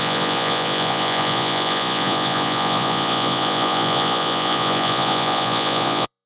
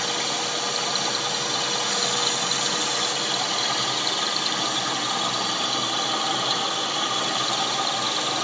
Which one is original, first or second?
second